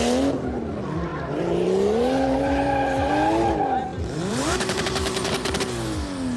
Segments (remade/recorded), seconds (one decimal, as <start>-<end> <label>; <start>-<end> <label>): 0.0-1.1 recorded; 1.1-3.1 remade; 3.1-3.9 recorded; 3.9-5.6 remade; 5.6-6.4 recorded